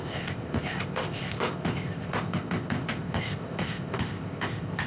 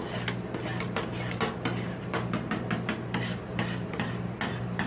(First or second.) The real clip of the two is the second